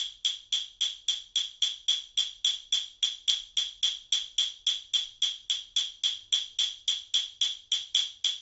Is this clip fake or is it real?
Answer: real